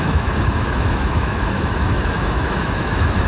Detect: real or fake fake